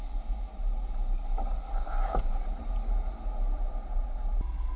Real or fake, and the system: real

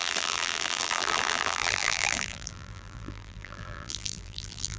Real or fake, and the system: fake, vocoder, BigVGAN v2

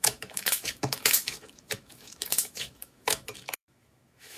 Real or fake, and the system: fake, autoencoder, DAC-VAE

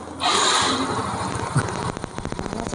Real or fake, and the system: real